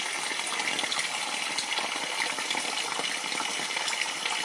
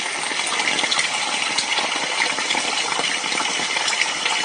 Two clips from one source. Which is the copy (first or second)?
second